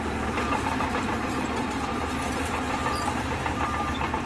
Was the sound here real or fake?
fake